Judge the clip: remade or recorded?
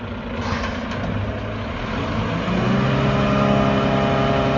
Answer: recorded